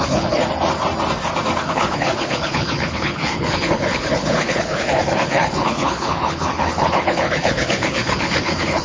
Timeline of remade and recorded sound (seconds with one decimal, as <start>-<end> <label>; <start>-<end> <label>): 0.0-0.4 remade; 0.4-1.6 recorded; 1.6-8.8 remade